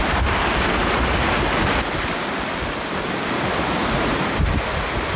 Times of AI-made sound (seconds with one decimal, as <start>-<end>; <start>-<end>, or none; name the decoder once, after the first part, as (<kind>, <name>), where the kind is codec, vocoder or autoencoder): 3.8-4.3 (vocoder, Vocos)